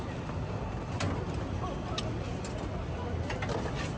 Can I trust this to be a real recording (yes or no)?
yes